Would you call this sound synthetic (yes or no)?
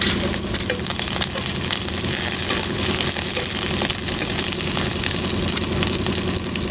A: no